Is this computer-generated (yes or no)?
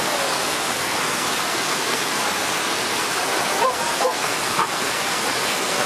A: yes